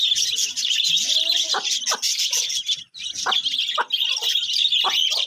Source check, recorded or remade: recorded